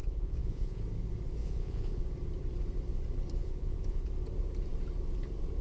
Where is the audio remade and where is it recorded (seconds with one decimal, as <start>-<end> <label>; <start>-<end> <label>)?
0.0-0.8 remade; 0.8-1.4 recorded; 1.4-2.0 remade; 2.0-3.4 recorded; 3.4-4.1 remade; 4.1-5.6 recorded